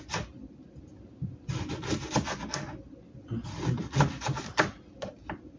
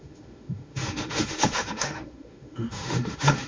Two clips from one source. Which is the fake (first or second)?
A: second